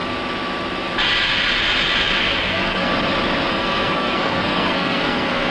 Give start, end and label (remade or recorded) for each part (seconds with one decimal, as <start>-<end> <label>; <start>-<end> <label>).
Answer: 0.0-2.2 recorded; 2.2-2.9 remade; 2.9-3.5 recorded; 3.5-5.5 remade